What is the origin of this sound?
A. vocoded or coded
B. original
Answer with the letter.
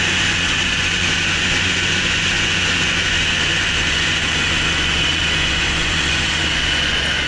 A